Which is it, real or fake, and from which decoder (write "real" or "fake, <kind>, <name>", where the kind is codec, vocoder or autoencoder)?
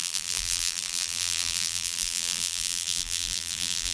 fake, vocoder, BigVGAN v2